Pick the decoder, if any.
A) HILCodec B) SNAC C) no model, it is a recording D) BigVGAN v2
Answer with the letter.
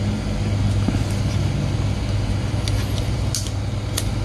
C